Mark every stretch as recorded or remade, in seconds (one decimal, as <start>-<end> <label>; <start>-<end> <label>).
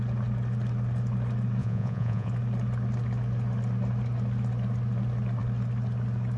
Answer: 0.0-1.6 recorded; 1.6-2.3 remade; 2.3-6.4 recorded